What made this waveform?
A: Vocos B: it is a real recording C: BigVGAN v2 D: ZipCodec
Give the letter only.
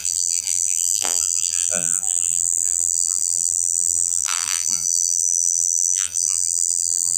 C